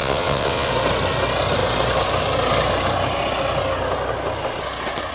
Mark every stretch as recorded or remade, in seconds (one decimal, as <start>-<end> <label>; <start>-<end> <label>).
0.0-0.7 remade; 0.7-5.1 recorded